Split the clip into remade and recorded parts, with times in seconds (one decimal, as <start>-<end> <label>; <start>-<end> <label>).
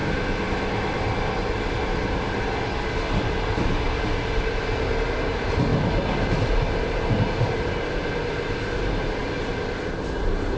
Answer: 0.0-10.6 recorded